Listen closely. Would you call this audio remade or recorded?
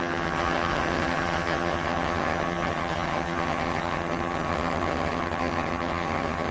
remade